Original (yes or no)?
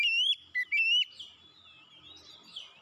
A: yes